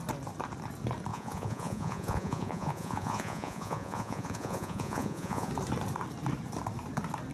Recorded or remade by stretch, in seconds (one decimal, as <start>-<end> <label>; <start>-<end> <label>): 0.0-1.1 recorded; 1.1-5.5 remade; 5.5-7.3 recorded